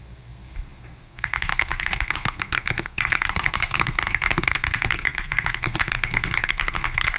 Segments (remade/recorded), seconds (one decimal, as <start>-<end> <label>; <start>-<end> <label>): 0.0-7.2 remade